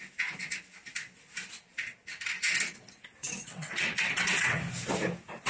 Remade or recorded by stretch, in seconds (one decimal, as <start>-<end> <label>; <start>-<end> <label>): 0.0-3.2 recorded; 3.2-4.6 remade; 4.6-5.5 recorded